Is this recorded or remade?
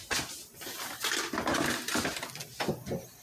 recorded